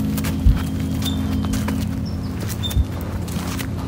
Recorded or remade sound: recorded